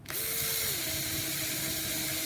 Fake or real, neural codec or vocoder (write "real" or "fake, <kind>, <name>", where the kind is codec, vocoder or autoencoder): real